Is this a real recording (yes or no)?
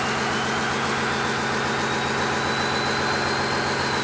yes